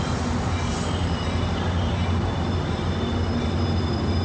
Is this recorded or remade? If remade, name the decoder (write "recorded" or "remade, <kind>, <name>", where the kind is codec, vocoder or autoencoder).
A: recorded